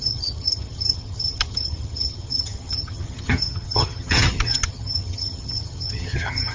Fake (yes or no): yes